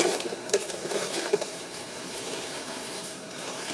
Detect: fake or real fake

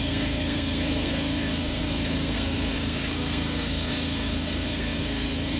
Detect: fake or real fake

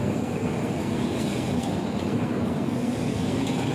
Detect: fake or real fake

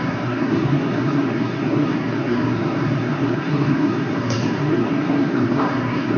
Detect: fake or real fake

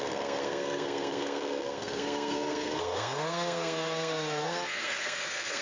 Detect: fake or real fake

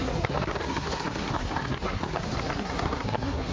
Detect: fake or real fake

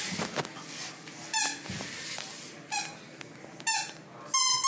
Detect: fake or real real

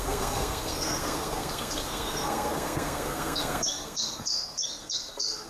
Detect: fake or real fake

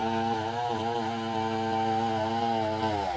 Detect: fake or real real